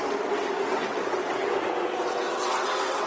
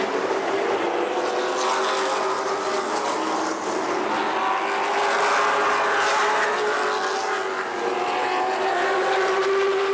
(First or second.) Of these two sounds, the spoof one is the first